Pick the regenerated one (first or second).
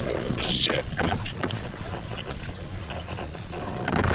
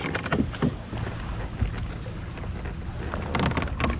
first